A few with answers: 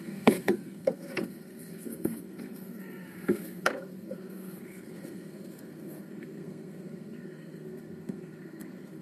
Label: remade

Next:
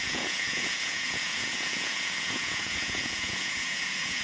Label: remade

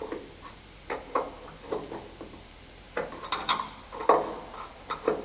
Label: recorded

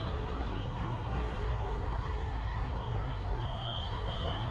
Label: remade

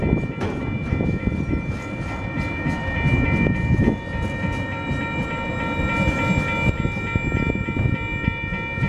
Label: recorded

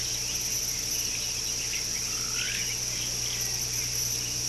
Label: recorded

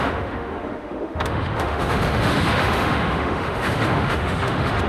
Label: remade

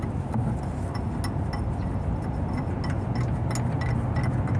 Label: recorded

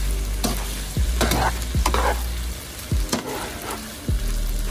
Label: recorded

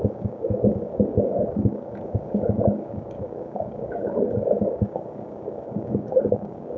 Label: remade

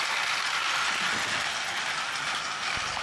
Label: recorded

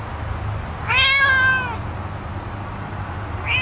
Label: recorded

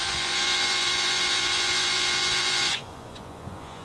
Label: remade